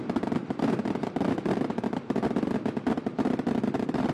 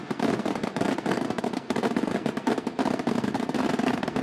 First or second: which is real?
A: first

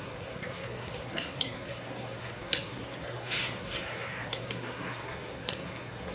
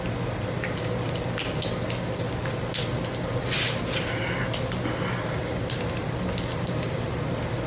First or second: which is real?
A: second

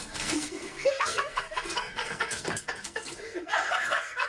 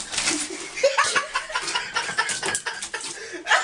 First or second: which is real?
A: second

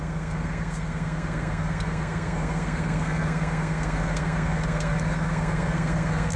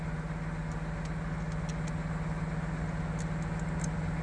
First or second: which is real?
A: second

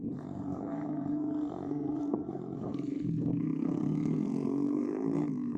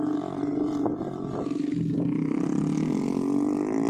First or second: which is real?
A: second